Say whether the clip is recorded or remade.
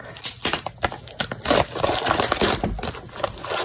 recorded